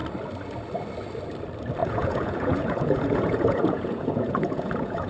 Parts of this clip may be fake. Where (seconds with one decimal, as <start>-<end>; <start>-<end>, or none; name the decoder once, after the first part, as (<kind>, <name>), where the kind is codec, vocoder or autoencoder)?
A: 1.8-5.1 (vocoder, Vocos)